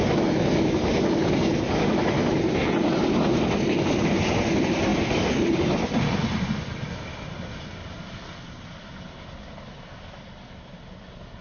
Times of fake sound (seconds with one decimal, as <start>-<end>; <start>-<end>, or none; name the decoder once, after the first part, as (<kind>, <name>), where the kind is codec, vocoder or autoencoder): none